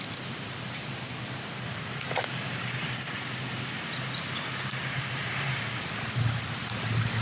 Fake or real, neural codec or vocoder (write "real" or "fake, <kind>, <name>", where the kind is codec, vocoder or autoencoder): real